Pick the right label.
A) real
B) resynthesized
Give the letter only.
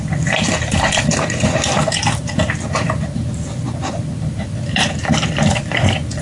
B